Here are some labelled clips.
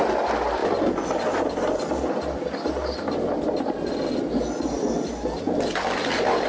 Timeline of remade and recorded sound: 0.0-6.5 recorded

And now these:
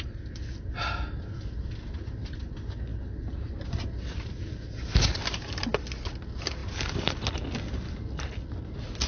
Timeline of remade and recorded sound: 0.0-9.1 recorded

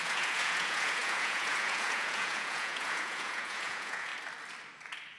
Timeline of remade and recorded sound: 0.0-4.1 remade; 4.1-5.2 recorded

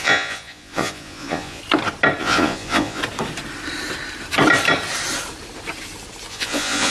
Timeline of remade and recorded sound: 0.0-1.6 remade; 1.6-2.2 recorded; 2.2-3.0 remade; 3.0-6.3 recorded; 6.3-6.9 remade

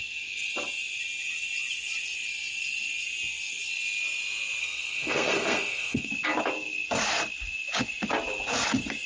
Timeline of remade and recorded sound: 0.0-4.6 recorded; 4.6-6.1 remade; 6.1-9.1 recorded

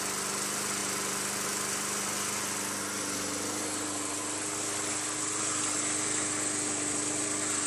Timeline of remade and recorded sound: 0.0-7.7 recorded

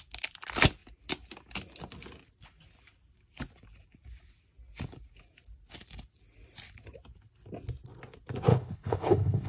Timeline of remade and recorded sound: 0.0-8.5 recorded; 8.5-9.5 remade